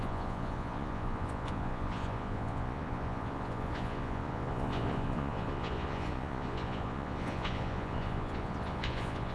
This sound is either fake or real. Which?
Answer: fake